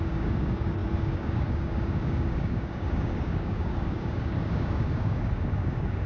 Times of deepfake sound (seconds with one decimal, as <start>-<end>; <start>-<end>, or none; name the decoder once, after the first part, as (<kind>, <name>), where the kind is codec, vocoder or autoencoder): 0.0-6.1 (codec, DAC)